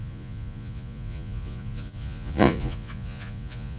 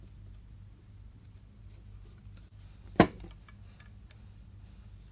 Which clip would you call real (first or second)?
second